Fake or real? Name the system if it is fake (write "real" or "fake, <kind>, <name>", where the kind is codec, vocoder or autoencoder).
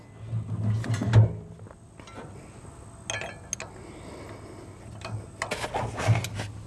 real